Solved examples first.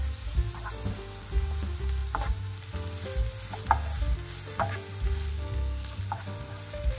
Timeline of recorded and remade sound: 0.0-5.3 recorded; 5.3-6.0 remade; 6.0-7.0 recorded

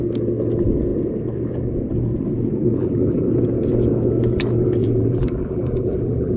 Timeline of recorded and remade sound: 0.0-2.8 recorded; 2.8-3.3 remade; 3.3-4.8 recorded; 4.8-6.4 remade

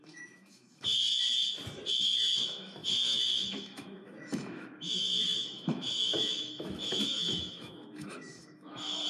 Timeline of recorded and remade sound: 0.0-1.0 remade; 1.0-2.0 recorded; 2.0-9.1 remade